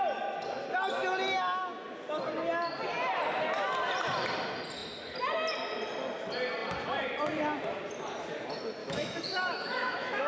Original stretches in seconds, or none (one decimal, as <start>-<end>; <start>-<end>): 0.0-8.8